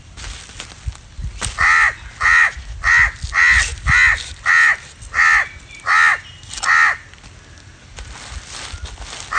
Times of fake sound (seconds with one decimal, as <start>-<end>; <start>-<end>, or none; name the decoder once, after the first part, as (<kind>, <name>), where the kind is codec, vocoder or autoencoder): none